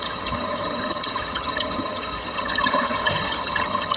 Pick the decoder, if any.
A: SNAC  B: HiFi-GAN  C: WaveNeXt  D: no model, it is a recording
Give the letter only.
B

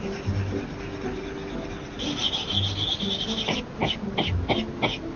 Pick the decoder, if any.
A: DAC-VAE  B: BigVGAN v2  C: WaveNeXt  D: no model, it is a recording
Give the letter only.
D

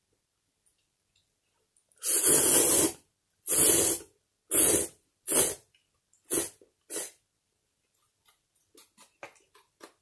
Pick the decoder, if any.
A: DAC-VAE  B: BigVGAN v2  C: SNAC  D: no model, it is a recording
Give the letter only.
D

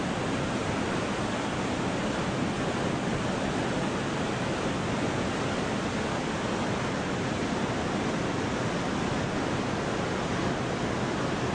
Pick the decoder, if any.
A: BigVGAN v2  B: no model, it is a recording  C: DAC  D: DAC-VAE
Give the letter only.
B